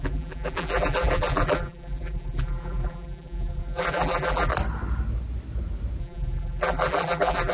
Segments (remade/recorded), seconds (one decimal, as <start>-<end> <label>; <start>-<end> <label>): 0.0-4.5 remade; 4.5-6.0 recorded; 6.0-7.5 remade